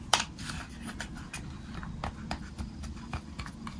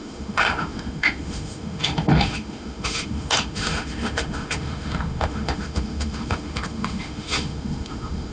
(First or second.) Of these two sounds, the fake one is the second